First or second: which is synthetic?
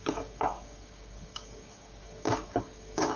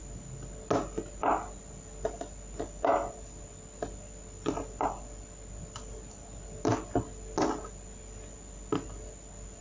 first